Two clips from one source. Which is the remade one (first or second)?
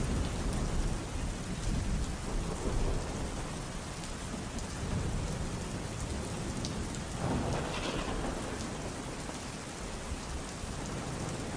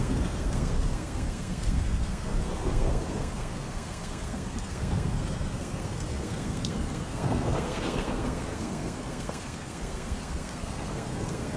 second